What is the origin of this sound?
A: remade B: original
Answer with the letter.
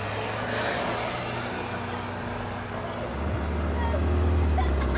B